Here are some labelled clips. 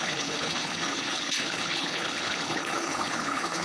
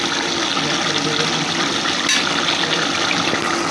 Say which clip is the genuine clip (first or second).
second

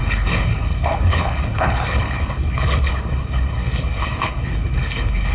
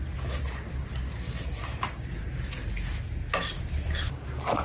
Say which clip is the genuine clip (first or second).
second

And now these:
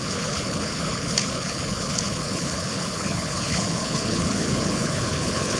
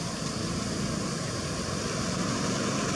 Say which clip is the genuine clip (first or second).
second